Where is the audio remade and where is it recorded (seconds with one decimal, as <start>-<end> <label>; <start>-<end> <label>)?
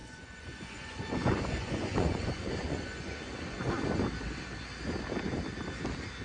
0.0-3.7 remade; 3.7-6.2 recorded